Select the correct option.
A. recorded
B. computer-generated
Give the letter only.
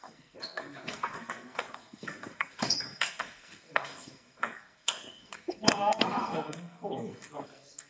B